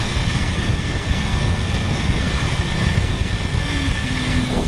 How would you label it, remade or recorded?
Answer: remade